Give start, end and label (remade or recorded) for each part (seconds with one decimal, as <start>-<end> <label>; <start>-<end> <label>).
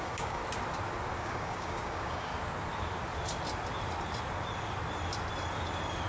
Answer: 0.0-0.4 remade; 0.4-1.2 recorded; 1.2-2.3 remade; 2.3-6.1 recorded